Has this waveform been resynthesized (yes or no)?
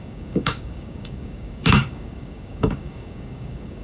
yes